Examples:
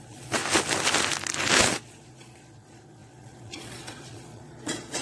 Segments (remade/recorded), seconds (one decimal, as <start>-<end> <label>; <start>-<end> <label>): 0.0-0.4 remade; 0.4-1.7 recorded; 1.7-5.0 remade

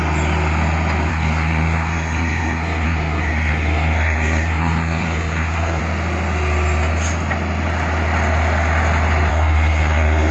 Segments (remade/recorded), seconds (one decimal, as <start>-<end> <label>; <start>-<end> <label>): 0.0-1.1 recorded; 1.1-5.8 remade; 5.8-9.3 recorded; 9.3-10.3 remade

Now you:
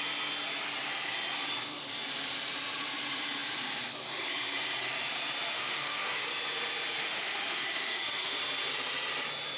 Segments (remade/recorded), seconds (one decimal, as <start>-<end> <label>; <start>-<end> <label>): 0.0-5.5 recorded; 5.5-6.3 remade; 6.3-7.0 recorded; 7.0-8.4 remade; 8.4-9.6 recorded

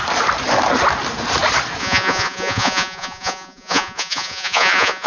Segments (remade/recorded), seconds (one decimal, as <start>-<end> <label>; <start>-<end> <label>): 0.0-1.8 recorded; 1.8-5.1 remade